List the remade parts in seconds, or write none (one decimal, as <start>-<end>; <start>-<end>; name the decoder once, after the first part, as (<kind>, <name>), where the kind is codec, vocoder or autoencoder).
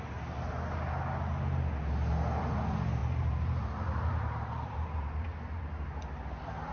3.0-5.6 (vocoder, BigVGAN v2)